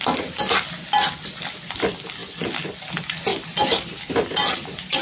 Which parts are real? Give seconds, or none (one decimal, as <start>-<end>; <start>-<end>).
0.0-5.0